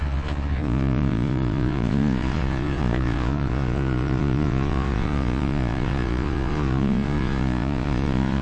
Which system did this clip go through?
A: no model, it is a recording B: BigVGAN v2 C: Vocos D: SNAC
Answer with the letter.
C